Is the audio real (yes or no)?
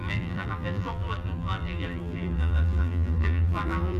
no